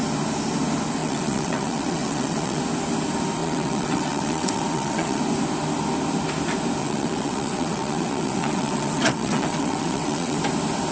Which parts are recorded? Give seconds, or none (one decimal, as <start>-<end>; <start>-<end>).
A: 0.0-1.0; 2.6-3.4; 5.2-6.8; 10.4-10.9